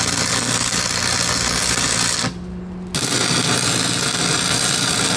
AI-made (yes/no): no